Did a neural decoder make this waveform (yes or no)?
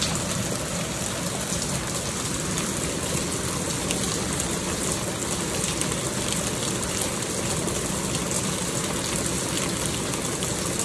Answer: no